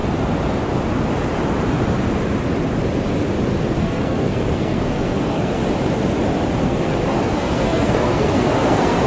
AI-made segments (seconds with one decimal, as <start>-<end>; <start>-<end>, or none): 3.8-5.6; 6.6-9.1